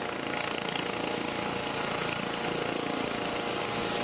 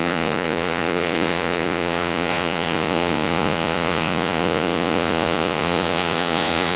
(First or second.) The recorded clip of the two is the first